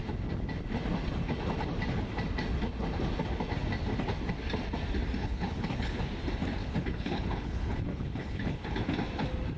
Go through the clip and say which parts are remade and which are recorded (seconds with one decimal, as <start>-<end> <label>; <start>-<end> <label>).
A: 0.0-5.2 recorded; 5.2-6.0 remade; 6.0-6.6 recorded; 6.6-8.8 remade; 8.8-9.6 recorded